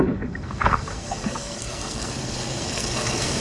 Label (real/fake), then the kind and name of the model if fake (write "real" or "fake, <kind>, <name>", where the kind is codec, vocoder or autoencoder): fake, codec, SNAC